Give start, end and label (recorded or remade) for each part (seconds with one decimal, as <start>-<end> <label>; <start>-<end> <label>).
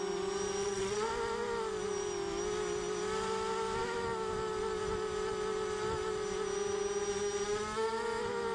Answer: 0.0-0.6 recorded; 0.6-1.1 remade; 1.1-8.5 recorded